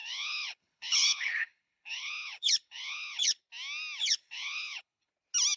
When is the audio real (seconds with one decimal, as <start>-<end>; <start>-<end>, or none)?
3.4-4.0; 5.1-5.6